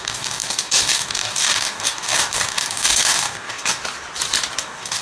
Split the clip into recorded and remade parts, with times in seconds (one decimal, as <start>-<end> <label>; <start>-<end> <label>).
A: 0.0-3.8 remade; 3.8-4.6 recorded; 4.6-5.0 remade